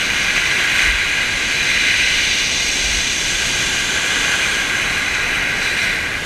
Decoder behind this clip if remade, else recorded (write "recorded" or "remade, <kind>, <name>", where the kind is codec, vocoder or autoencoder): recorded